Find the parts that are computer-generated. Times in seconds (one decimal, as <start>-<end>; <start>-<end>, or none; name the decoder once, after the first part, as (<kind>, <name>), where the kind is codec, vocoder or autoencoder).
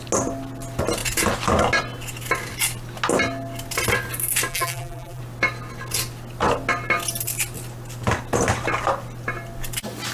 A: 4.5-5.2 (vocoder, BigVGAN v2)